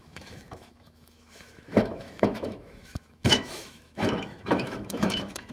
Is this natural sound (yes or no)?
no